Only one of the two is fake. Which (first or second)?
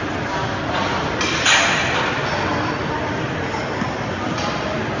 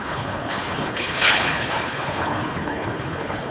second